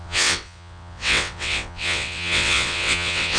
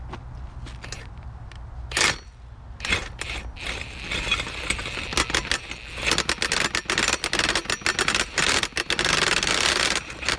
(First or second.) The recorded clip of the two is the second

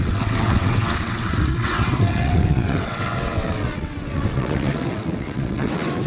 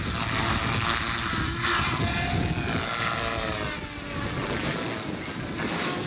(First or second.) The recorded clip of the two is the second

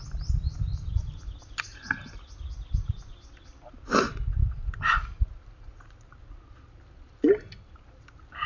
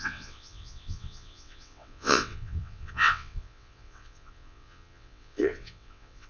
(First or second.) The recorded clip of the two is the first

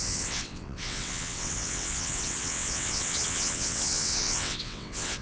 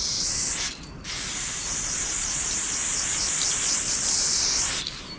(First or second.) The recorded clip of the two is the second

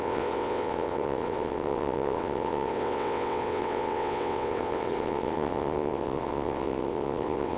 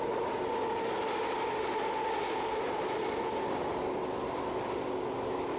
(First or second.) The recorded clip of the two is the second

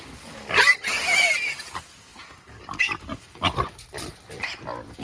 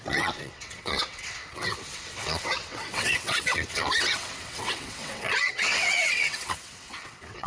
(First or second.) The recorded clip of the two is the first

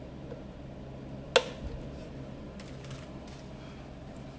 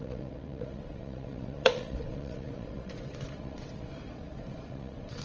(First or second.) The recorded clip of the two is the first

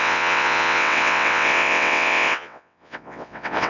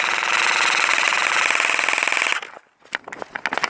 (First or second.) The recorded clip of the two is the second